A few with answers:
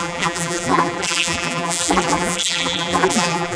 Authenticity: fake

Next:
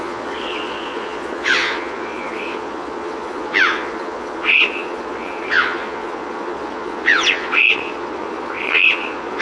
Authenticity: fake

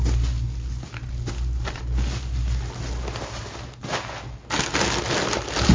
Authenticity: real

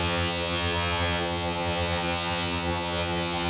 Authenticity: fake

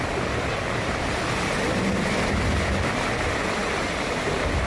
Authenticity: real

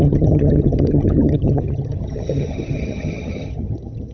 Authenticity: fake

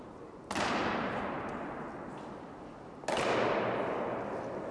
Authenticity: real